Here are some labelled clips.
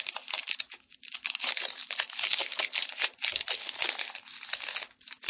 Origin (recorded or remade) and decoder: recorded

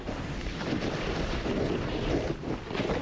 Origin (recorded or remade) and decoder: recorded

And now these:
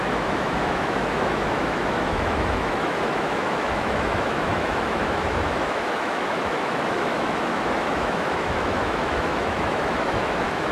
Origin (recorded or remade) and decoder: remade, autoencoder, DAC-VAE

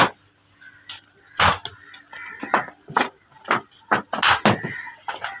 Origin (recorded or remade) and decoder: recorded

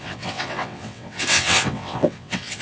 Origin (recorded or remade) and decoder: remade, vocoder, WaveNeXt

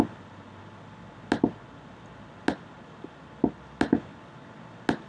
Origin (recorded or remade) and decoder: recorded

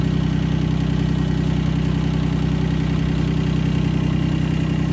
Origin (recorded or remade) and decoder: recorded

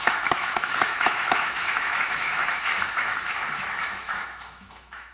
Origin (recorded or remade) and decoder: remade, autoencoder, DAC-VAE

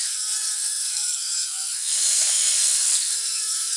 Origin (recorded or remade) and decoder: remade, codec, SNAC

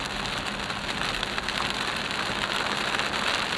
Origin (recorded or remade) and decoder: recorded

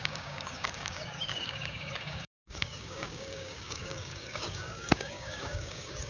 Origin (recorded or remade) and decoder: remade, codec, DAC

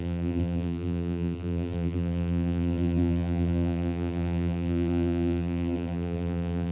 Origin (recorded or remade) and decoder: remade, vocoder, BigVGAN v2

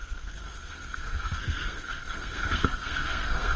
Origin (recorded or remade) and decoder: remade, codec, SNAC